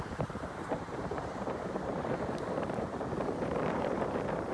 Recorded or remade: remade